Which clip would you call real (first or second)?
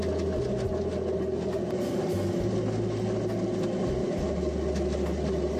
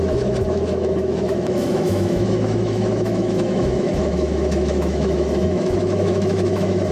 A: first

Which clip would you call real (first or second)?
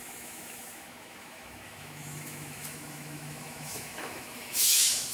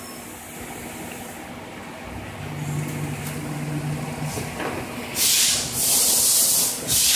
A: second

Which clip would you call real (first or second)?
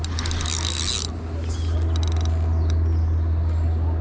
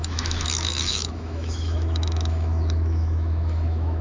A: first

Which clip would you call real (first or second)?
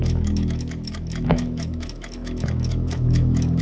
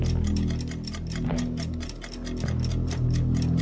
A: second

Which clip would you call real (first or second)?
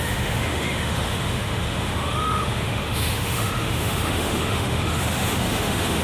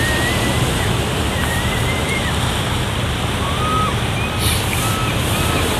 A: second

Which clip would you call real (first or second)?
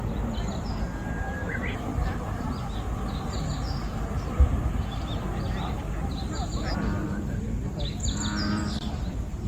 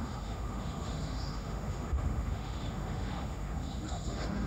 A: first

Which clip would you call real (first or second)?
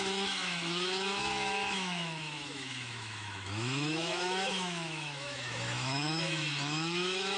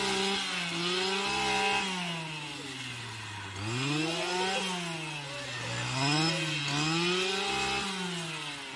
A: second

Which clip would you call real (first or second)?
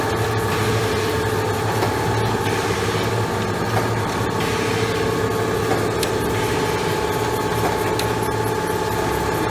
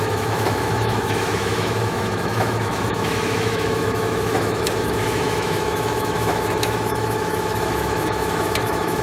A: first